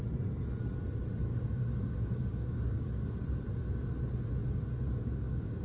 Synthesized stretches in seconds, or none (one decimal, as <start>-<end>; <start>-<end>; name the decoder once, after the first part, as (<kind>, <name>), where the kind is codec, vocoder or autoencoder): 1.3-3.0 (codec, DAC); 4.4-5.6